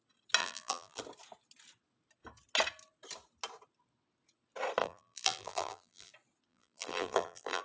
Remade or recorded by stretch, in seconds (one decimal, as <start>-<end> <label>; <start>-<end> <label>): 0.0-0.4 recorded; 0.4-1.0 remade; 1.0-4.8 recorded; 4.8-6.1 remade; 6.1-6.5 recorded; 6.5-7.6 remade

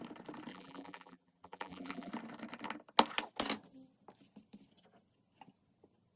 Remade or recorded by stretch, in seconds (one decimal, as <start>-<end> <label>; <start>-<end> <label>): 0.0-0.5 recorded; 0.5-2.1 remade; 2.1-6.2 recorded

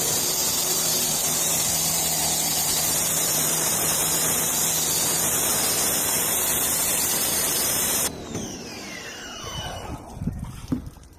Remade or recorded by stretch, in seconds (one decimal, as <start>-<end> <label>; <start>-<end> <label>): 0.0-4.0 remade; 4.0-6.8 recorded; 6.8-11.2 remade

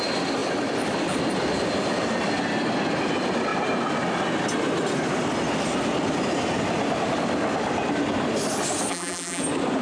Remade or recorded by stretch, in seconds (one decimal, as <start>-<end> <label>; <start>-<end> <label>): 0.0-8.9 recorded; 8.9-9.4 remade; 9.4-9.8 recorded

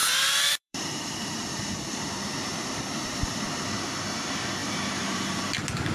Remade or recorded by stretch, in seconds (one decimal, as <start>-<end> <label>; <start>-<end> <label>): 0.0-3.4 remade; 3.4-4.6 recorded; 4.6-5.4 remade; 5.4-5.9 recorded

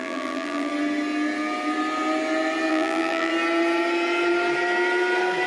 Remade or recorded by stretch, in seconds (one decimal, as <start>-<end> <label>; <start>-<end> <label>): 0.0-0.7 remade; 0.7-2.7 recorded; 2.7-3.3 remade; 3.3-5.5 recorded

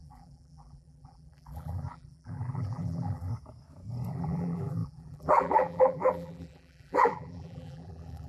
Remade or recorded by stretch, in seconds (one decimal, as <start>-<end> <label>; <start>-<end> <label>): 0.0-3.3 remade; 3.3-4.1 recorded; 4.1-8.3 remade